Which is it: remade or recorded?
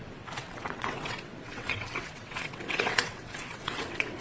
remade